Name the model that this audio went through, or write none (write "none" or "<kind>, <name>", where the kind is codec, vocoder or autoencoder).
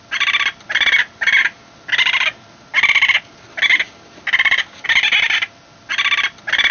none